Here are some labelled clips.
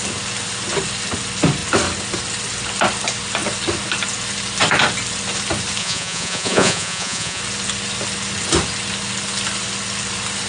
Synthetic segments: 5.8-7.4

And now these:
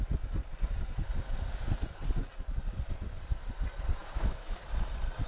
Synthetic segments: 4.0-4.6

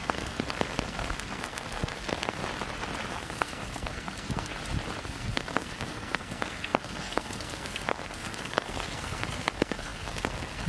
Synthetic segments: 0.0-2.4; 3.1-4.5; 5.0-10.7

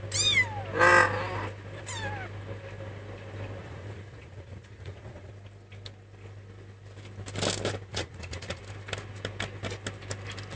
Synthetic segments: 3.6-5.3; 7.9-8.6